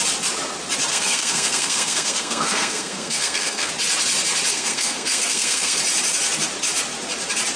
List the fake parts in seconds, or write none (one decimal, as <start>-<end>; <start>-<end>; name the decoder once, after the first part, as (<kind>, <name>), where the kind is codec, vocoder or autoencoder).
0.9-3.7 (codec, SNAC); 4.5-5.8